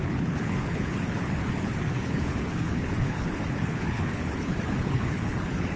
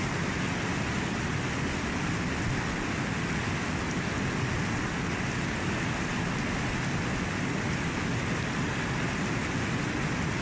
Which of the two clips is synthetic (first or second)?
first